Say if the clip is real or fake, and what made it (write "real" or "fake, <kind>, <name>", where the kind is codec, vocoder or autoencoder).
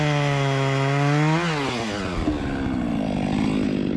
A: real